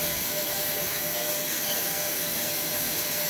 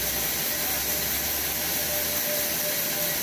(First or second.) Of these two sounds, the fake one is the first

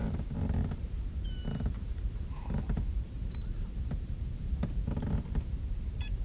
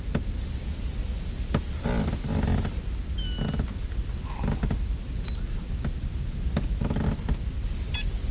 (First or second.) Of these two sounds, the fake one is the first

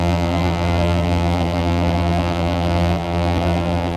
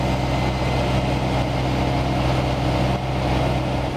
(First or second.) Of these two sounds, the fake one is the first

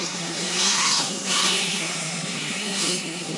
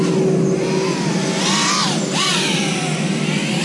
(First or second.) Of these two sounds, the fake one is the first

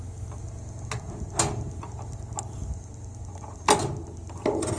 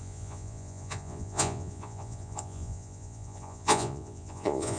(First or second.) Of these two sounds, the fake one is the second